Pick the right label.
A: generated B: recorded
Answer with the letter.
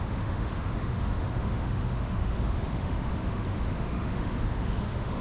A